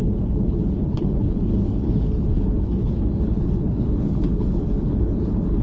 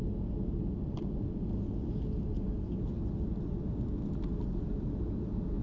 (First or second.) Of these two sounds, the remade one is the first